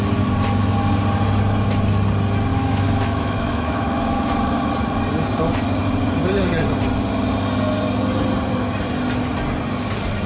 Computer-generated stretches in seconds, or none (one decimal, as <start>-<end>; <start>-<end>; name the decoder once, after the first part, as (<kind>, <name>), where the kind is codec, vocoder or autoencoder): 2.5-4.7 (autoencoder, DAC-VAE)